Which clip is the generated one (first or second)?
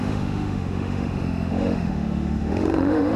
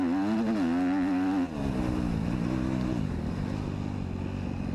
first